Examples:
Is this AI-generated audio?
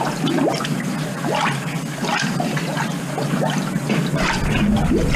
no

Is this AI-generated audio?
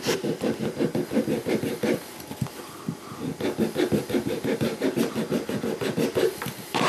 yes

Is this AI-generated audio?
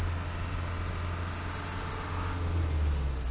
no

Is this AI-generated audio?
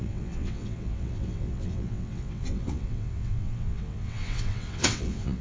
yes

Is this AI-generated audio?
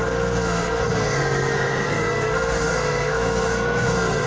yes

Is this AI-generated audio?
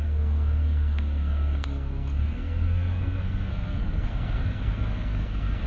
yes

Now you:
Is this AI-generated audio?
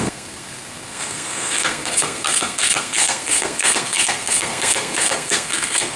yes